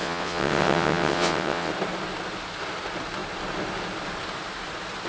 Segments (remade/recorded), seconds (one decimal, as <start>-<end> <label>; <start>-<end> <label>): 0.0-1.7 remade; 1.7-5.1 recorded